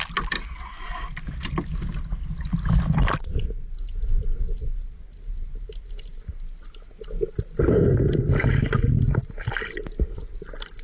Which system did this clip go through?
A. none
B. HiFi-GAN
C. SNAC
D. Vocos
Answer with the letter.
A